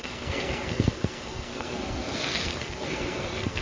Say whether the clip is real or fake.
fake